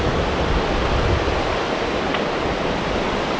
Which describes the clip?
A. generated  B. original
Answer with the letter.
B